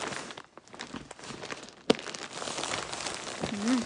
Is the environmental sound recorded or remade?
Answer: recorded